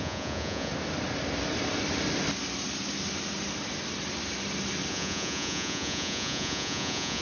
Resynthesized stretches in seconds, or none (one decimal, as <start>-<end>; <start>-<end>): 0.0-0.7; 4.9-7.2